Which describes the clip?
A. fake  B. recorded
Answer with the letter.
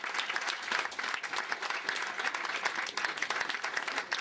B